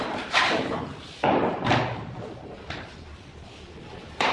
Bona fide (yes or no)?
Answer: yes